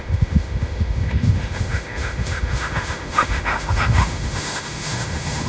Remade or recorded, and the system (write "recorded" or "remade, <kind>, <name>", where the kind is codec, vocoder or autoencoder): remade, autoencoder, DAC-VAE